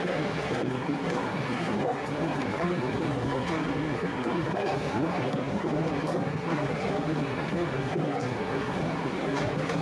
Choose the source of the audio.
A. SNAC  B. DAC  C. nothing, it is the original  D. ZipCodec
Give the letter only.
A